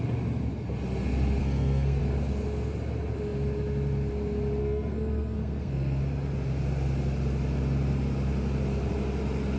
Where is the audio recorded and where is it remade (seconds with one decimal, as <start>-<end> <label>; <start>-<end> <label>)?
0.0-1.4 recorded; 1.4-2.0 remade; 2.0-4.6 recorded; 4.6-6.0 remade; 6.0-9.6 recorded